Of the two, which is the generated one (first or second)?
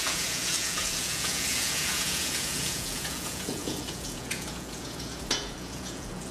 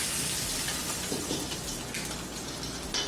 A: first